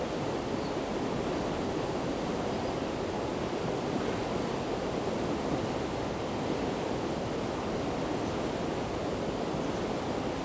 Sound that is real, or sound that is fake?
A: real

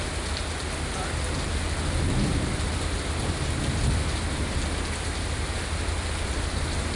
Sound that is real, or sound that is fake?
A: real